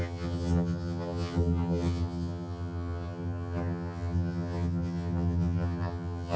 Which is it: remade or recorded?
remade